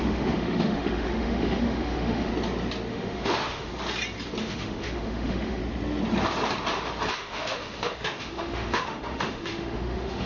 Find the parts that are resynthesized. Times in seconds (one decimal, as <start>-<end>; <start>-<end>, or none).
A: 0.0-2.3; 2.9-3.7; 4.4-5.6; 7.1-10.3